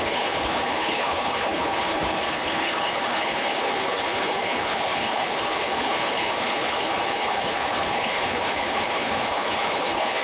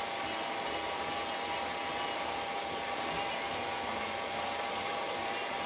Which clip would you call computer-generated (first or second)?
first